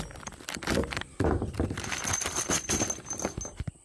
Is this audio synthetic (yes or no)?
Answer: no